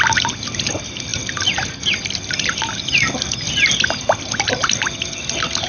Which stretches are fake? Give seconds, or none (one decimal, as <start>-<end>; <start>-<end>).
none